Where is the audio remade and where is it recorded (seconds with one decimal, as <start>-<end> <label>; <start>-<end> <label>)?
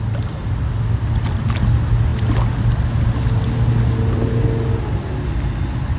0.0-6.0 recorded